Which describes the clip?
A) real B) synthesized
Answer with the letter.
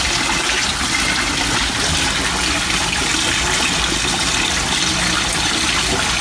A